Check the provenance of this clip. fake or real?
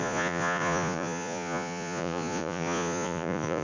fake